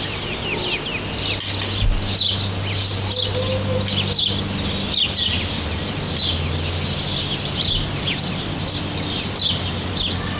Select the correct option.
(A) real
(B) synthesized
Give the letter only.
A